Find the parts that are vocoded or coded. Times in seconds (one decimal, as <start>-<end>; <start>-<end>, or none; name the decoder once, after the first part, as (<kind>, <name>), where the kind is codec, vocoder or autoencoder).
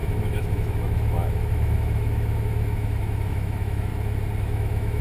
0.0-3.9 (autoencoder, DAC-VAE); 4.4-5.0